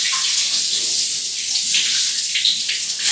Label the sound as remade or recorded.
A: recorded